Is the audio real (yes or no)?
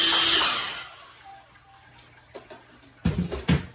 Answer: yes